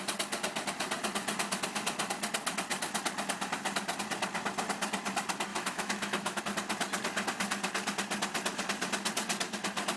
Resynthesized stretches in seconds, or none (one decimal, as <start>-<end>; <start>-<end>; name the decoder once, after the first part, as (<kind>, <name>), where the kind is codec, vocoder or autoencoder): 5.5-6.4 (autoencoder, DAC-VAE)